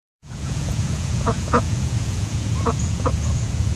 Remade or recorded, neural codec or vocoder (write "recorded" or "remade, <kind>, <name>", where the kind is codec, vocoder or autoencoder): remade, vocoder, Vocos